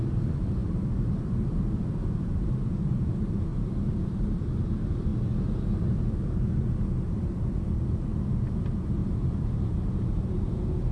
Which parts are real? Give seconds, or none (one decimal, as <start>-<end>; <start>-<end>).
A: 3.5-4.0; 5.1-5.8